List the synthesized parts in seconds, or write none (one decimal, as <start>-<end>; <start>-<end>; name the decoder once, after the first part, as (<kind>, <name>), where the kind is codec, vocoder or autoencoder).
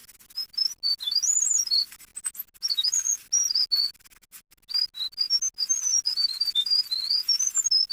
none